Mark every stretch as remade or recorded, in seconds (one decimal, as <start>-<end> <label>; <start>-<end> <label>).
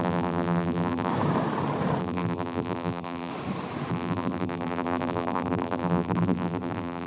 0.0-1.1 remade; 1.1-2.0 recorded; 2.0-3.3 remade; 3.3-3.9 recorded; 3.9-7.1 remade